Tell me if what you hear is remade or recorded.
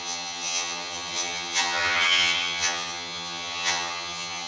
remade